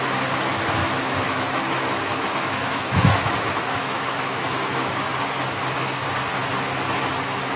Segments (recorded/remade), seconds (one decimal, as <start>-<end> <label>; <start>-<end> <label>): 0.0-0.8 recorded; 0.8-5.1 remade; 5.1-7.6 recorded